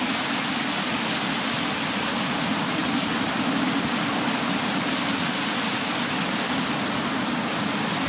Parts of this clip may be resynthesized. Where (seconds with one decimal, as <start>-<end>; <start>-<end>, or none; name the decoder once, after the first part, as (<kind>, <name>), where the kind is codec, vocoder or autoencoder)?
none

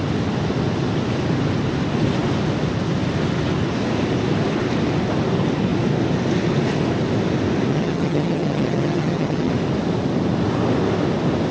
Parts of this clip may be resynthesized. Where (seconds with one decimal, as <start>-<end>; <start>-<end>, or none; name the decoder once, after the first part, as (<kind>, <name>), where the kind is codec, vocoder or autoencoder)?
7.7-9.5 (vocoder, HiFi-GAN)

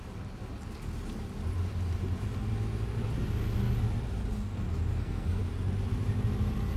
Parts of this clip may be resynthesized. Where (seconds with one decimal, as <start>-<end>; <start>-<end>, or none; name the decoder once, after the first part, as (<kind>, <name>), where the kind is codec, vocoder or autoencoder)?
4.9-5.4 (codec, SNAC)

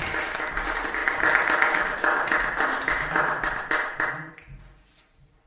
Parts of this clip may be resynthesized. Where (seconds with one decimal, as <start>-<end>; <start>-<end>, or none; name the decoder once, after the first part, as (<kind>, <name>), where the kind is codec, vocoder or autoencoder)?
none